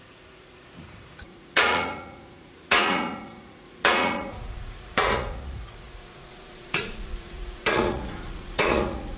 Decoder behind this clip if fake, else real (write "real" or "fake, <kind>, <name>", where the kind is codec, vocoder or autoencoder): fake, vocoder, Vocos